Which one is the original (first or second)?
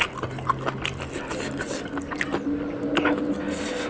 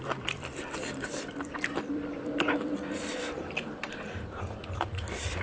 first